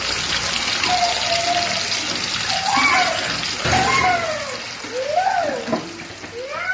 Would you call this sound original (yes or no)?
yes